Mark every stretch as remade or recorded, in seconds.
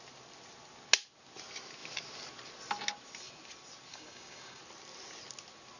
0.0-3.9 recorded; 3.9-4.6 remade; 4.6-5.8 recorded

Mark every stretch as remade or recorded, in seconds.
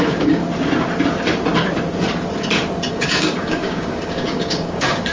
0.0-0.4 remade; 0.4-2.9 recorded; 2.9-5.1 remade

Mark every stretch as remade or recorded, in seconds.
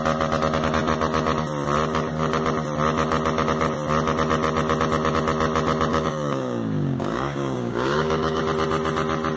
0.0-5.9 recorded; 5.9-8.4 remade; 8.4-9.4 recorded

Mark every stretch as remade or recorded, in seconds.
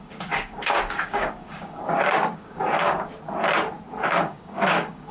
0.0-3.1 remade; 3.1-4.2 recorded; 4.2-5.1 remade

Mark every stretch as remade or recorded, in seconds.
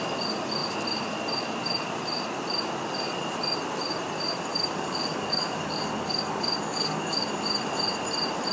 0.0-4.5 recorded; 4.5-7.4 remade; 7.4-8.5 recorded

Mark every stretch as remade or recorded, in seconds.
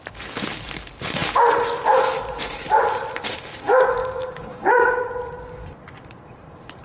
0.0-4.0 recorded; 4.0-5.1 remade; 5.1-6.8 recorded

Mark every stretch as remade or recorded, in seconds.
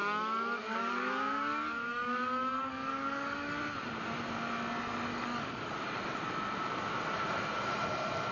0.0-3.6 remade; 3.6-5.1 recorded; 5.1-5.7 remade; 5.7-8.3 recorded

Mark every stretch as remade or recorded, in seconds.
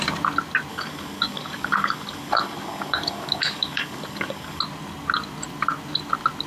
0.0-0.7 recorded; 0.7-4.6 remade; 4.6-6.5 recorded